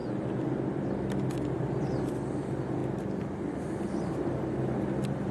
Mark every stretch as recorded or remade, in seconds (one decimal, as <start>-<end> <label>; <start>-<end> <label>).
0.0-5.3 recorded

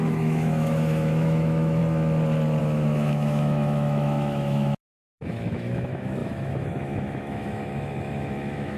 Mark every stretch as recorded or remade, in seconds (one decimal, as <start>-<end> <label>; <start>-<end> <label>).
0.0-1.8 remade; 1.8-2.6 recorded; 2.6-8.8 remade

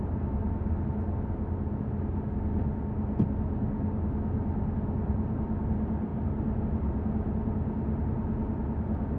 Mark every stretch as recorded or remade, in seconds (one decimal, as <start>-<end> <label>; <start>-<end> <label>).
0.0-9.2 recorded

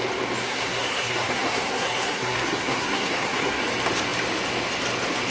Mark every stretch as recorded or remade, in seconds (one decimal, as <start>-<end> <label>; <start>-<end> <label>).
0.0-0.4 recorded; 0.4-3.6 remade; 3.6-5.3 recorded

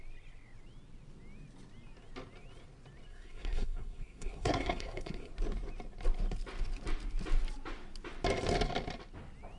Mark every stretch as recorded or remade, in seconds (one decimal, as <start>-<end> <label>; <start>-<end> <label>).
0.0-3.1 recorded; 3.1-5.3 remade; 5.3-9.6 recorded